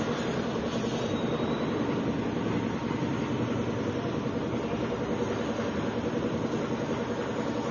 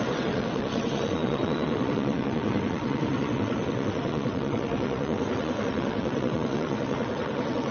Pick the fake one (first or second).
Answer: second